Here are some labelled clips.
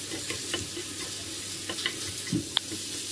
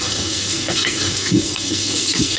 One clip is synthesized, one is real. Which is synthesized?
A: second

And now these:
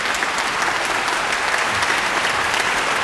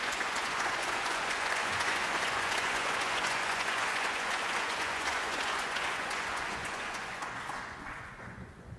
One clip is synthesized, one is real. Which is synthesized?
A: second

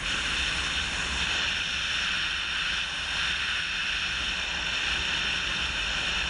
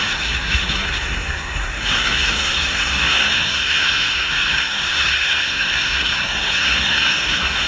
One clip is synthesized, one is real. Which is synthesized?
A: second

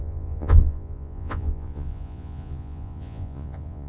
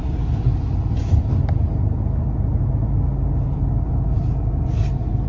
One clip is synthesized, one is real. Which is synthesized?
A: first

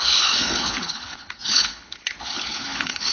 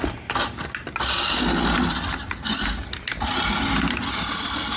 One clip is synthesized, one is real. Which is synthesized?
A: first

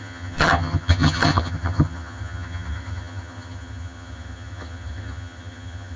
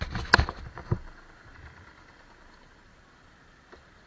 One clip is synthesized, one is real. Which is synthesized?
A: first